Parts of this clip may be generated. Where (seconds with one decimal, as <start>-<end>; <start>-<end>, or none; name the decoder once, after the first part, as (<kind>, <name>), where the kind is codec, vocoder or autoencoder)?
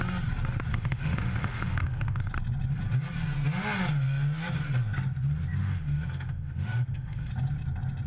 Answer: 0.7-2.3 (autoencoder, DAC-VAE); 5.6-7.3